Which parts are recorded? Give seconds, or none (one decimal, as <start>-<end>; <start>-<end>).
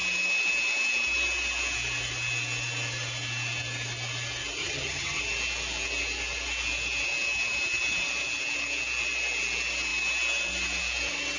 0.0-4.6; 5.2-11.4